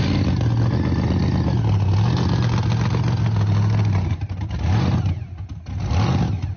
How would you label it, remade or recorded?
recorded